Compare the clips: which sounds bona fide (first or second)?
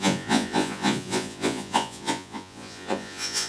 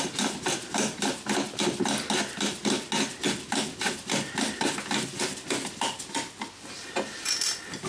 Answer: second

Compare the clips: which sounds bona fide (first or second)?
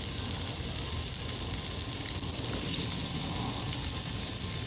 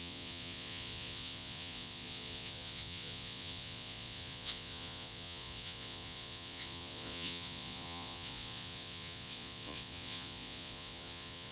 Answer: first